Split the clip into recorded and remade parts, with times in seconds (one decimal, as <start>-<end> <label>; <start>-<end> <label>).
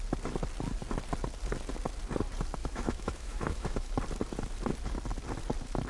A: 0.0-2.6 recorded; 2.6-3.9 remade; 3.9-5.9 recorded